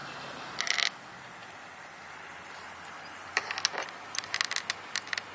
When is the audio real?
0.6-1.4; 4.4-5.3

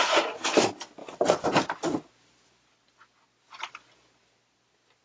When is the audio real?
0.0-5.0

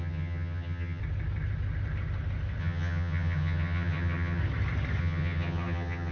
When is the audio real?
1.0-2.6; 4.4-5.0

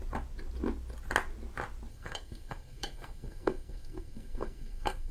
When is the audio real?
0.0-1.9

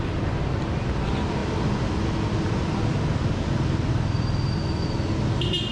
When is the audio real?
0.0-5.7

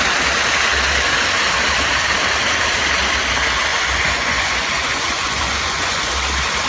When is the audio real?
0.0-3.7; 6.1-6.7

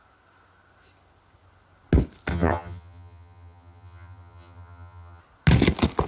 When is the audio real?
0.0-2.3; 5.2-6.1